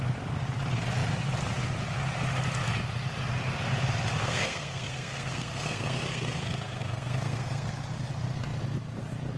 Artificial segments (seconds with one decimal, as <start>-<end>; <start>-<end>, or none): 4.2-7.7